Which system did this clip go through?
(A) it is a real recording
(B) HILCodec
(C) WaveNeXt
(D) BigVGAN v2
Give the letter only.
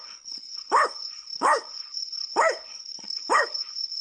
B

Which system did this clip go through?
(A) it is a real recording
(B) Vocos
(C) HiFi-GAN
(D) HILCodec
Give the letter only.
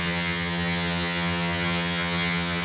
C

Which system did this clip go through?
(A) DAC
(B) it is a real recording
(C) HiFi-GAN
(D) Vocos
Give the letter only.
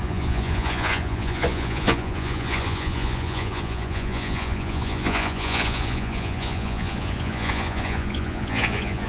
D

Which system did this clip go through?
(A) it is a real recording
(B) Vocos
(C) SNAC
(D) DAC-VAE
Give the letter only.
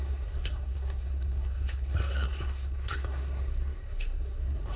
C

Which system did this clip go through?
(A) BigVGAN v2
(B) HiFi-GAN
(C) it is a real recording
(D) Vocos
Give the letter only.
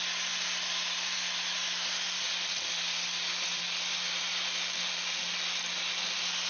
C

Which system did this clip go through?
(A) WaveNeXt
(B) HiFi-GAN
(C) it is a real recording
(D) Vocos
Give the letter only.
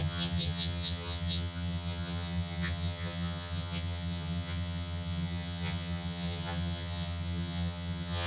B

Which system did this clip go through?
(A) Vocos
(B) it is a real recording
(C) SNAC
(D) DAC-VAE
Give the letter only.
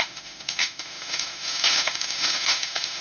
D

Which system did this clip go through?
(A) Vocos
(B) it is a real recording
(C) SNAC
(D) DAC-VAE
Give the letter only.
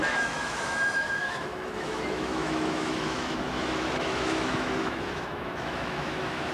D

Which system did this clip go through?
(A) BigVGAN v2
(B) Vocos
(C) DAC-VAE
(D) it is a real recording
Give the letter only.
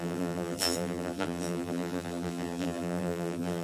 A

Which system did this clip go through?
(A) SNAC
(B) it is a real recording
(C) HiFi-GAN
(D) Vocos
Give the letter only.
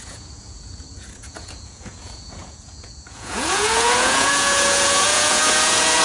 D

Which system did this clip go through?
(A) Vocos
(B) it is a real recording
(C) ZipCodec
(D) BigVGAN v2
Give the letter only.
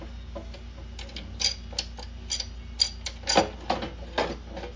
B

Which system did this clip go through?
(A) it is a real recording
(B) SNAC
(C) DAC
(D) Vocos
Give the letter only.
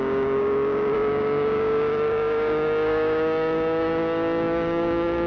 C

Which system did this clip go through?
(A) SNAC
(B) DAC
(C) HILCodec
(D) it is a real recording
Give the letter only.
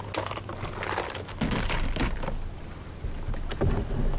D